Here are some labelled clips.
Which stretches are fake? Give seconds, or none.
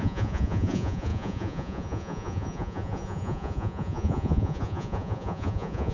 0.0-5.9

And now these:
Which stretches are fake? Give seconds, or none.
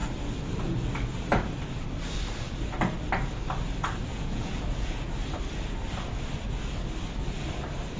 4.1-5.1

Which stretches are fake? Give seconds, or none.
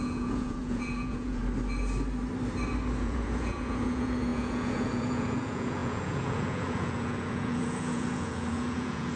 0.0-1.4; 3.0-9.2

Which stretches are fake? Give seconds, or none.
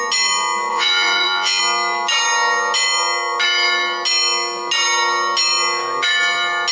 0.7-1.6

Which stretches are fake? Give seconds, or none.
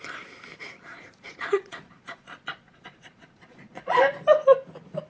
0.9-4.0